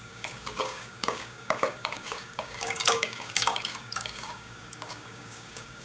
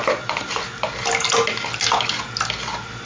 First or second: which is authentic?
second